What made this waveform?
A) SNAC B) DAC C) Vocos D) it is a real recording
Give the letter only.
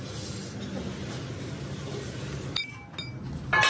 D